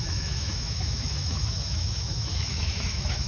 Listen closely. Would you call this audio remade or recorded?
remade